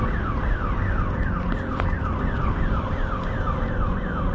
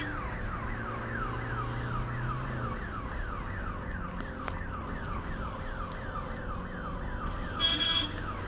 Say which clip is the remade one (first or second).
first